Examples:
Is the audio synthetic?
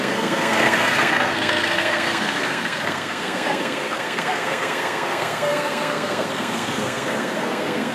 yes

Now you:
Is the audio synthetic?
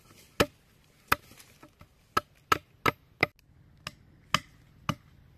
no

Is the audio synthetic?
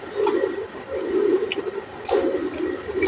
no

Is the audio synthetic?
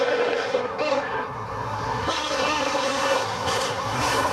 yes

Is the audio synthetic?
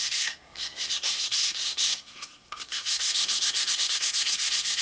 yes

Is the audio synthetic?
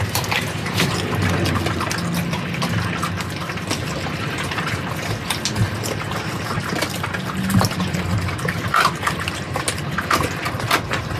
no